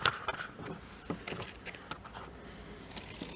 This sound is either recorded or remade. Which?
recorded